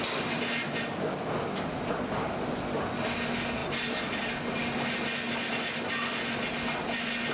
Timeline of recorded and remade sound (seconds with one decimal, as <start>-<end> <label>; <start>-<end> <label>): 0.0-7.3 recorded